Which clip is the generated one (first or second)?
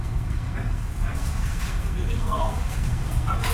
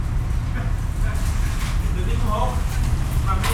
first